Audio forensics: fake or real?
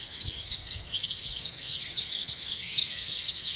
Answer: fake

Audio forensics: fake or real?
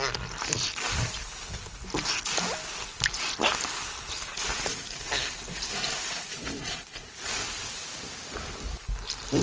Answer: real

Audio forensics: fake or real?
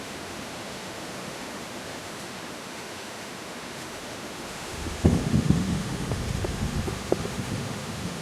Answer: fake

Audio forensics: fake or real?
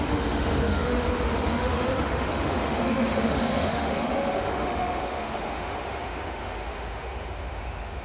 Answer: fake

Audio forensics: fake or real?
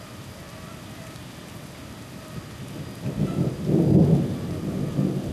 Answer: real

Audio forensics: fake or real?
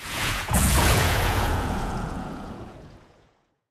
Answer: fake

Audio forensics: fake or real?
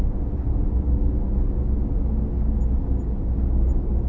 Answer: real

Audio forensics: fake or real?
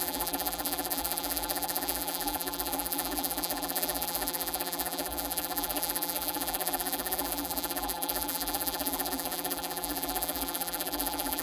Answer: fake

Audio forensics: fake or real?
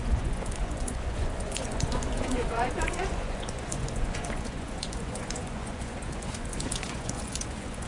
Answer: fake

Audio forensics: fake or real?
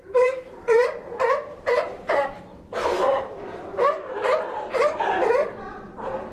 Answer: fake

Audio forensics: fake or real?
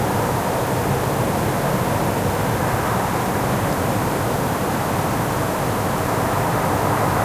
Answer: real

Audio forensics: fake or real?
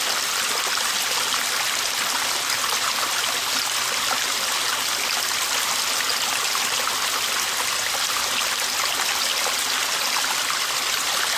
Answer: real